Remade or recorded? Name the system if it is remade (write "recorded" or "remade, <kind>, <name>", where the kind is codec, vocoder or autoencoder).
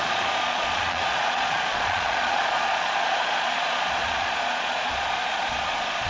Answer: remade, vocoder, Vocos